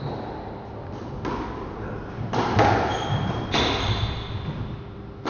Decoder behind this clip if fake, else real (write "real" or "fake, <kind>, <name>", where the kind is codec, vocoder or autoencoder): real